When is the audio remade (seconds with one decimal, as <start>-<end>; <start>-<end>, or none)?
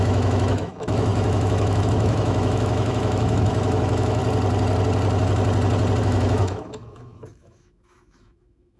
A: 0.0-4.2; 6.0-8.8